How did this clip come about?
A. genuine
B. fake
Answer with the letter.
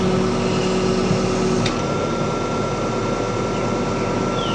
A